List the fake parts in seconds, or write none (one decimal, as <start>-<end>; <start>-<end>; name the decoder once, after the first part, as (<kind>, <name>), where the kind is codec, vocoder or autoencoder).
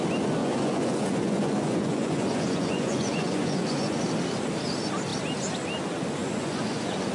0.4-4.0 (vocoder, Vocos); 6.2-7.1